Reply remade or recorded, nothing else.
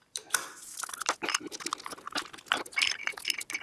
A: recorded